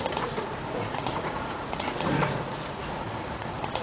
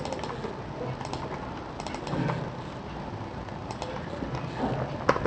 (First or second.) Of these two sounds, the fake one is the first